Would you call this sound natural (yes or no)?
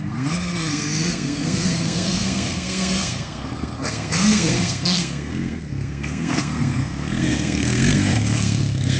no